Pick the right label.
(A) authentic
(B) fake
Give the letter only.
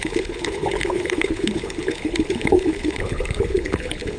B